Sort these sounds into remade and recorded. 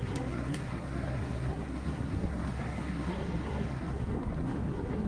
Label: remade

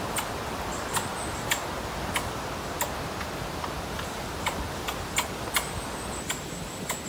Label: recorded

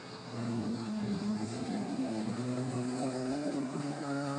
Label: remade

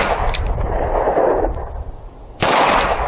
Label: recorded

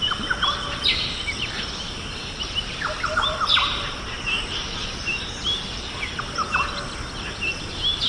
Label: recorded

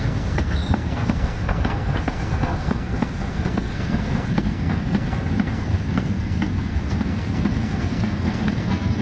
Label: remade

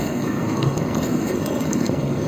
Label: remade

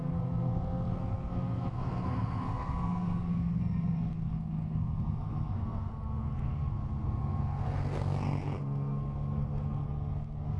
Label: remade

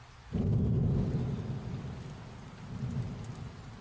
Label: recorded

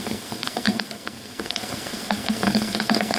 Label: remade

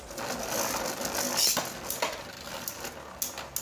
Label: recorded